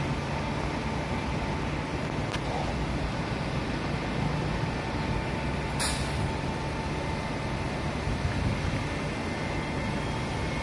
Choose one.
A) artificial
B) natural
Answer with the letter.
B